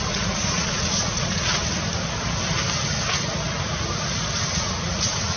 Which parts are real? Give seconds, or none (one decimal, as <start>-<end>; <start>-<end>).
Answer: 1.6-4.5